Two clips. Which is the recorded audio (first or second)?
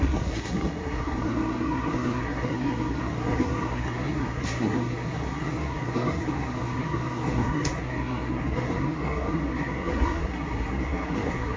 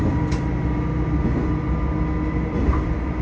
second